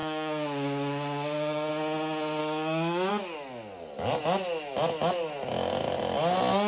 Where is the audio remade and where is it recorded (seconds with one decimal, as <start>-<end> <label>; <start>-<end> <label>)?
0.0-1.7 remade; 1.7-2.4 recorded; 2.4-3.1 remade; 3.1-6.7 recorded